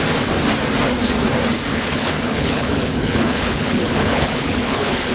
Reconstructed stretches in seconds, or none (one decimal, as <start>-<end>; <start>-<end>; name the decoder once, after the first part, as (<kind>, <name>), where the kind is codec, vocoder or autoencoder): 1.7-5.1 (codec, HILCodec)